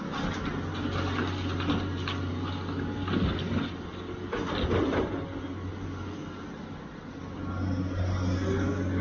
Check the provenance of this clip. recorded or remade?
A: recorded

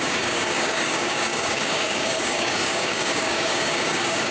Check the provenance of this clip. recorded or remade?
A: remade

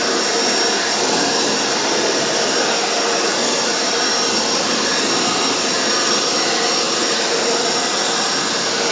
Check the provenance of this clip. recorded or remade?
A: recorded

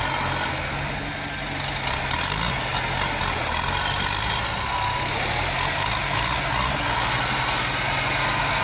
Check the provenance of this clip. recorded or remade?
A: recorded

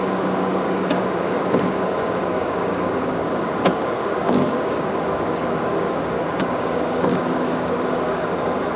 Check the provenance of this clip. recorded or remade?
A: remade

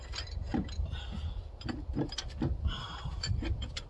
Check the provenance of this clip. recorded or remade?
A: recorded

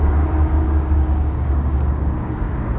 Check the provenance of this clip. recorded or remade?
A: remade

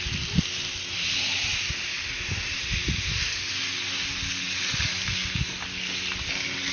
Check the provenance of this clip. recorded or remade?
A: recorded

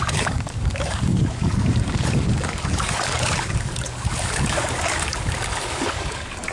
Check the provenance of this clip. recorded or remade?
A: remade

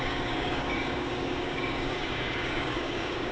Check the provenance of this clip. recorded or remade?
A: remade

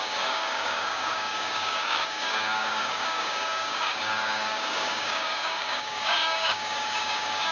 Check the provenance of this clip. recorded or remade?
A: remade